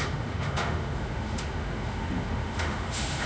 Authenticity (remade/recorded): remade